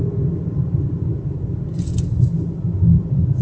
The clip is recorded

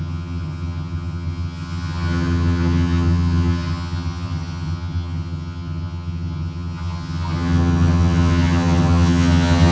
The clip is remade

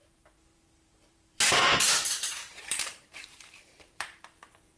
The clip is remade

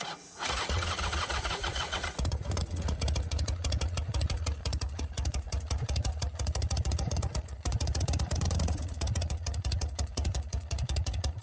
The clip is remade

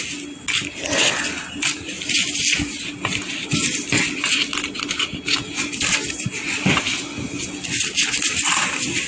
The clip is recorded